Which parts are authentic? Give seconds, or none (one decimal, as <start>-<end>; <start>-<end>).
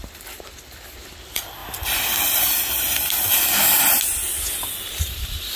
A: 1.6-5.0